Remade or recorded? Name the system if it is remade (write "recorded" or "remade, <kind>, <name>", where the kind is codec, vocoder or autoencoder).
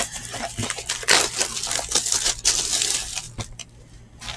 recorded